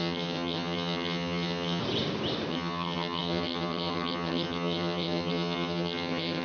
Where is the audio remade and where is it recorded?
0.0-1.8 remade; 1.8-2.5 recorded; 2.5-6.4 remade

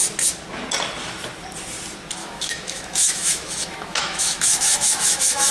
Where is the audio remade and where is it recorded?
0.0-2.2 recorded; 2.2-5.5 remade

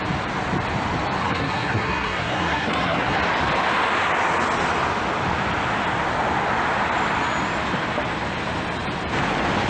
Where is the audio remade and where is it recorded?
0.0-1.2 recorded; 1.2-3.2 remade; 3.2-9.7 recorded

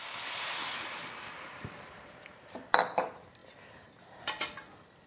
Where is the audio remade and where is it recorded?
0.0-2.3 remade; 2.3-3.0 recorded; 3.0-5.1 remade